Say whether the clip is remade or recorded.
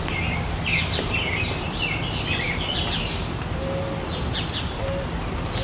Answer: remade